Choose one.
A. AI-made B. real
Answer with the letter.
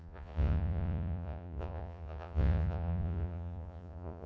A